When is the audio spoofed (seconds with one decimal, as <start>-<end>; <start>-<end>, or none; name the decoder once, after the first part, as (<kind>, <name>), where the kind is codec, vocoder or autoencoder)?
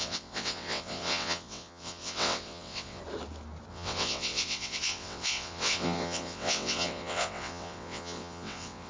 0.0-3.0 (vocoder, WaveNeXt); 3.7-8.9